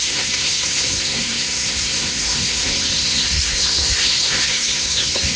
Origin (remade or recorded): remade